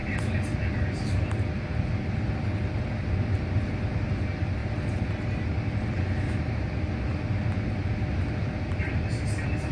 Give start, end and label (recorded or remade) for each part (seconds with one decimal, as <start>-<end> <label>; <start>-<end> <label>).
0.0-9.7 recorded